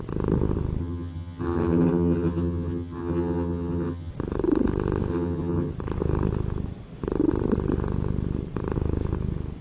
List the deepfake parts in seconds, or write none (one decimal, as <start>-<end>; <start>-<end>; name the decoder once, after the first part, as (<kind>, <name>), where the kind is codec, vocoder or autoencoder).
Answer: 0.8-4.1 (vocoder, HiFi-GAN); 5.1-5.7